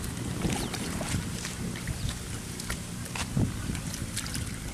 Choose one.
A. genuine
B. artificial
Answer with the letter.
B